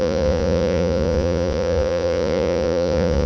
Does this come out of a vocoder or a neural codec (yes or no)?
yes